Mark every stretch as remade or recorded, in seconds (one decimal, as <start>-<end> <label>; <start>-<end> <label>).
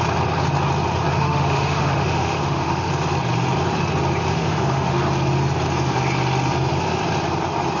0.0-1.1 recorded; 1.1-2.9 remade; 2.9-4.3 recorded; 4.3-5.0 remade; 5.0-7.8 recorded